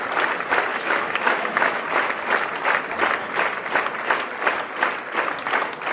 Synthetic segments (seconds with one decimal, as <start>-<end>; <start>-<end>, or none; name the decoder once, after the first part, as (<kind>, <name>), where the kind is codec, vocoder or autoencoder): 0.7-1.8 (autoencoder, DAC-VAE)

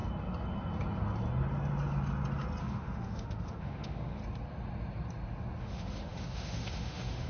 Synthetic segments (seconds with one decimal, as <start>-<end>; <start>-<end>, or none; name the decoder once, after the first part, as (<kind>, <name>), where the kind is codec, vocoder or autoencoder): 2.6-4.2 (autoencoder, DAC-VAE); 5.6-7.3

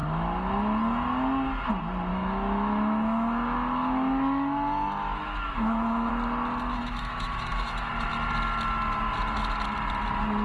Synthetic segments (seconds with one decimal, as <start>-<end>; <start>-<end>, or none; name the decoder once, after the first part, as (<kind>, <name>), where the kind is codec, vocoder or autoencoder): 2.1-6.1 (autoencoder, DAC-VAE); 6.7-7.9

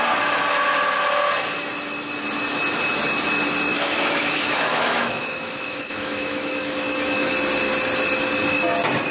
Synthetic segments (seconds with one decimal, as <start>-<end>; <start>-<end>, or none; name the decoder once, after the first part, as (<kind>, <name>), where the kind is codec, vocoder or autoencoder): 3.7-7.3 (autoencoder, DAC-VAE)

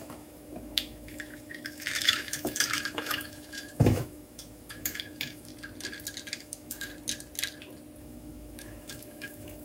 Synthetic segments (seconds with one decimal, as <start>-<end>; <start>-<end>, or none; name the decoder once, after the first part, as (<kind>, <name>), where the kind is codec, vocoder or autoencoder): 0.0-5.5 (autoencoder, DAC-VAE); 6.4-6.9; 8.0-9.6